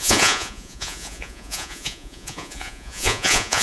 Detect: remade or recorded remade